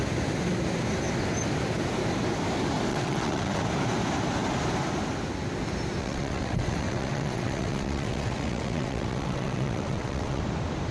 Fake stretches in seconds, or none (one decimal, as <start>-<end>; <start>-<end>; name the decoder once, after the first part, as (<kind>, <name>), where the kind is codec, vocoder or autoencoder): 2.9-3.6 (vocoder, WaveNeXt); 6.0-10.4